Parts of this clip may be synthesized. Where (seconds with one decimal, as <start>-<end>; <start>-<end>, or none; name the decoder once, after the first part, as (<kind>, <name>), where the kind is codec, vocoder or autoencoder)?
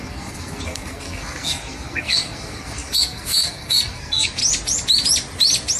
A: 0.0-4.4 (codec, SNAC)